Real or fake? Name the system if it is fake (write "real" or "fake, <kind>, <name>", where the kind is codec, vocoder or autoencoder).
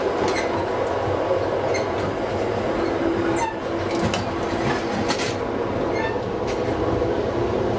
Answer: real